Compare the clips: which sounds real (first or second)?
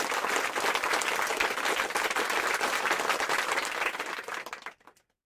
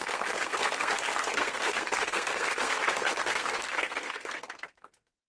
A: first